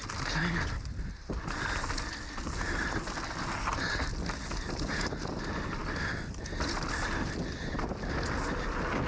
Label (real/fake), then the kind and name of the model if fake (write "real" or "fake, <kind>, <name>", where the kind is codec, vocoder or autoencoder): real